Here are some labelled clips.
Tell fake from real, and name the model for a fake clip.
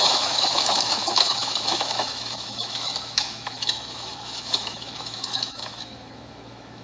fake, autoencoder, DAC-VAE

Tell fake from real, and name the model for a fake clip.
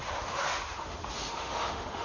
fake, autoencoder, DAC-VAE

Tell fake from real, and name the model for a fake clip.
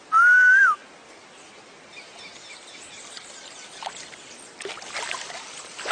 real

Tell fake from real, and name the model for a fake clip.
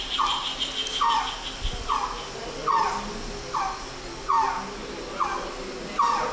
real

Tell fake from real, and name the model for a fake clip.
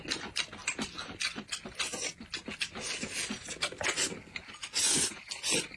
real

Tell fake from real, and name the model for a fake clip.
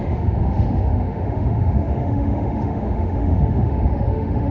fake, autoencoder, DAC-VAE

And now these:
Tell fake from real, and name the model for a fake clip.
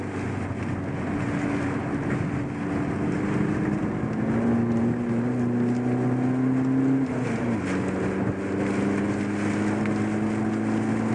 real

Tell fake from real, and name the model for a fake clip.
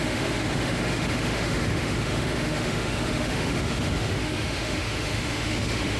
fake, autoencoder, DAC-VAE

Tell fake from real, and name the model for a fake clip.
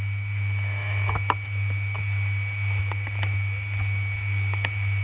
fake, autoencoder, DAC-VAE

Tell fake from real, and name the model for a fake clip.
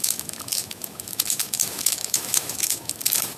fake, autoencoder, DAC-VAE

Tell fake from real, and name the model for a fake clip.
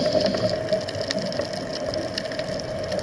real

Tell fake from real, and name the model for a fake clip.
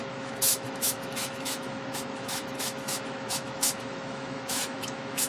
fake, autoencoder, DAC-VAE